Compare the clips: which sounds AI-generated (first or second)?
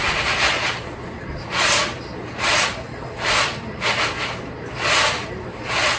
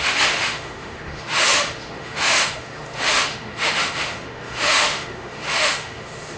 second